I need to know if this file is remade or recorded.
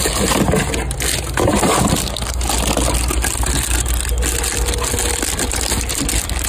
recorded